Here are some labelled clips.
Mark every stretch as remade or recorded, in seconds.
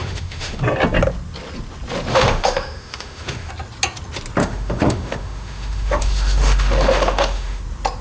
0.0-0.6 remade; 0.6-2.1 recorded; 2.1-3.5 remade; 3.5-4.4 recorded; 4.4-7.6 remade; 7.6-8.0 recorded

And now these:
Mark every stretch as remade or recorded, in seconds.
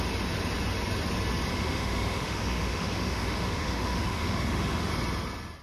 0.0-1.5 recorded; 1.5-4.9 remade; 4.9-5.6 recorded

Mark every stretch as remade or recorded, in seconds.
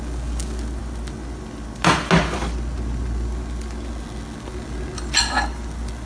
0.0-6.1 recorded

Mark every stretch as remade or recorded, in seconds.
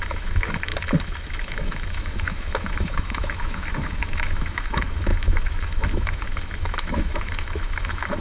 0.0-0.7 remade; 0.7-1.3 recorded; 1.3-8.2 remade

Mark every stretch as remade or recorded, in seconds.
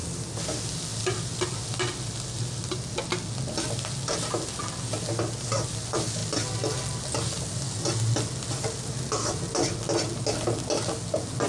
0.0-11.5 recorded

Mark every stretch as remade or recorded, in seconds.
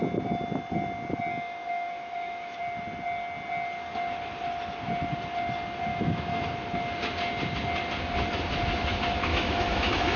0.0-1.3 recorded; 1.3-2.6 remade; 2.6-5.9 recorded; 5.9-6.4 remade; 6.4-9.3 recorded; 9.3-10.2 remade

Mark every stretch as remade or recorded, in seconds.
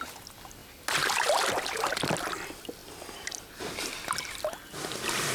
0.0-5.3 recorded